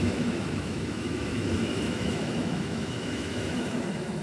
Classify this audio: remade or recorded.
remade